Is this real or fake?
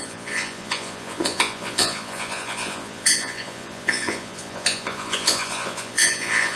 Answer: fake